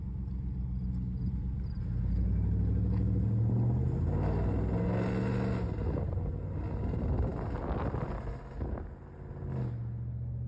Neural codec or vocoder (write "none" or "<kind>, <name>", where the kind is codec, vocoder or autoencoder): none